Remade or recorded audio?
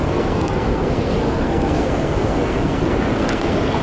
remade